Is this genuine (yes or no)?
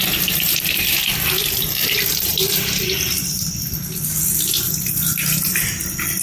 yes